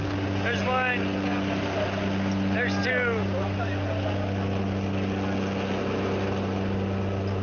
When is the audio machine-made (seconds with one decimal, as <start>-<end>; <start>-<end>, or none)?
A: none